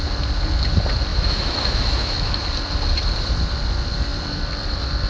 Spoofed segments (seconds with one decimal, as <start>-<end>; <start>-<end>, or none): 1.1-2.4